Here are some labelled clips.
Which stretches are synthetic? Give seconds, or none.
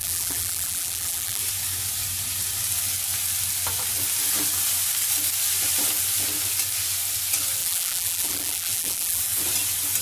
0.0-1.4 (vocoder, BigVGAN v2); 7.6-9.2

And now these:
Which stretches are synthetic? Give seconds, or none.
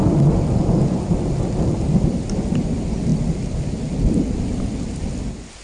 none